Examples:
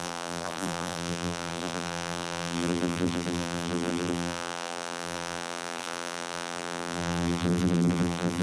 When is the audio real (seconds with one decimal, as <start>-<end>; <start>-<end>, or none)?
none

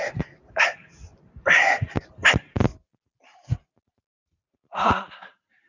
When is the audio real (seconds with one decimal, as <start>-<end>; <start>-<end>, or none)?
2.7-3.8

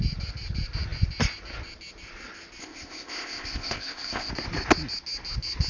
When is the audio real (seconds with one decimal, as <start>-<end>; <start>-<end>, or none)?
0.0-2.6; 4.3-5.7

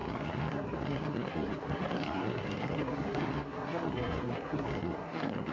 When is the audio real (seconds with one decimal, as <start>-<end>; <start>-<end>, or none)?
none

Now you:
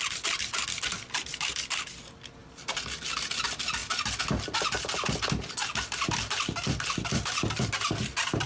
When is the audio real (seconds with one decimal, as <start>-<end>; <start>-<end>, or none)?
0.0-8.5

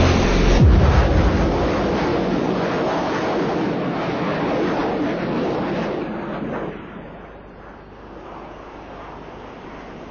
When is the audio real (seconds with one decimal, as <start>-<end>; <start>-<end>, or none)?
0.0-2.1; 2.7-10.1